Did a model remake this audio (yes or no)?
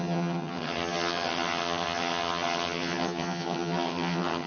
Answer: yes